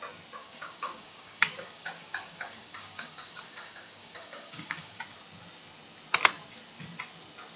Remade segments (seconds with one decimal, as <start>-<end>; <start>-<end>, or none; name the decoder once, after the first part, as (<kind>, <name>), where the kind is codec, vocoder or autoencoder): 0.4-5.0 (codec, DAC)